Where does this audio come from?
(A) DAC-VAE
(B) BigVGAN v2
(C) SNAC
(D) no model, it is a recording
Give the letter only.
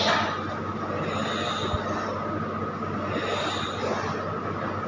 D